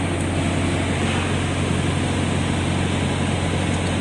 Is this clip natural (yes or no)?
yes